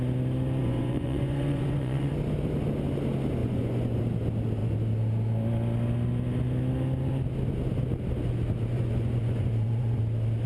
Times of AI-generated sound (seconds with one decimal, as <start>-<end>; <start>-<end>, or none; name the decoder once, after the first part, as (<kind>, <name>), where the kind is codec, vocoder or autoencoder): 0.6-2.1 (vocoder, Vocos); 3.4-4.0; 8.7-10.0